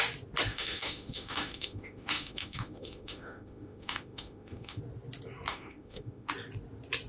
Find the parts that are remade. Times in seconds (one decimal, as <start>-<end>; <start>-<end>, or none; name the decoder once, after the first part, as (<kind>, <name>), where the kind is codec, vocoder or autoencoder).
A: 0.5-4.8 (autoencoder, DAC-VAE); 5.5-6.3